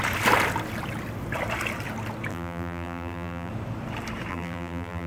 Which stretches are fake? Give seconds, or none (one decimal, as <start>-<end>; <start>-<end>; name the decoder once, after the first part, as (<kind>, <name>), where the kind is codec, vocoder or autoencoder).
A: 2.3-3.5 (vocoder, BigVGAN v2); 4.3-5.1